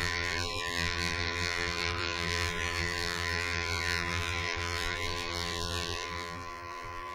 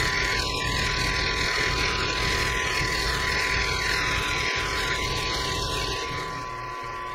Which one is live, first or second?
second